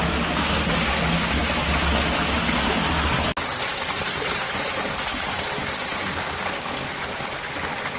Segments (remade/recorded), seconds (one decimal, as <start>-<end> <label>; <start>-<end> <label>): 0.0-5.9 recorded; 5.9-6.8 remade; 6.8-8.0 recorded